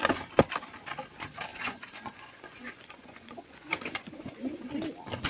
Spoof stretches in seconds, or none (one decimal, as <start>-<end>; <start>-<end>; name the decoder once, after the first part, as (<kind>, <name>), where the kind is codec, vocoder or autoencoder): 1.5-4.7 (vocoder, Vocos)